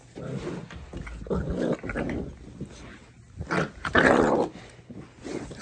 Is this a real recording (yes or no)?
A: yes